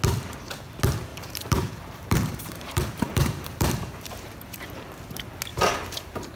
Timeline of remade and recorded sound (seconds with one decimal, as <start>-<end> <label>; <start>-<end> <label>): 0.0-1.1 recorded; 1.1-4.9 remade; 4.9-5.5 recorded; 5.5-6.4 remade